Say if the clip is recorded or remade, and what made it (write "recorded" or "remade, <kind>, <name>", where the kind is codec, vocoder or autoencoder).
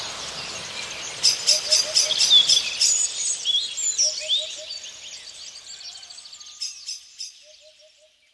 recorded